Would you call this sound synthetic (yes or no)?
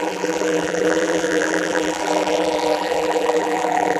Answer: yes